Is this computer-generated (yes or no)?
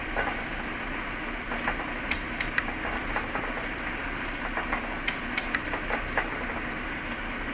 no